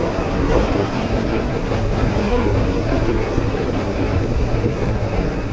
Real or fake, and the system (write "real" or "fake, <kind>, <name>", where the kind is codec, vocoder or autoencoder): fake, codec, SNAC